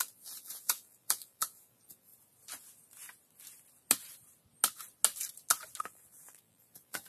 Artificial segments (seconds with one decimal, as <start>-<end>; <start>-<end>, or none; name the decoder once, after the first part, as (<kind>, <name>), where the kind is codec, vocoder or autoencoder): 0.0-2.1 (vocoder, BigVGAN v2); 5.8-7.1